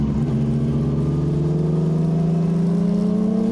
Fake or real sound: real